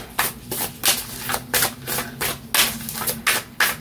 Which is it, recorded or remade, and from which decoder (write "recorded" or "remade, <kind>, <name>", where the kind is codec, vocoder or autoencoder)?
recorded